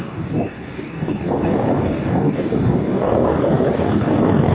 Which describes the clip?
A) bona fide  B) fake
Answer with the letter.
B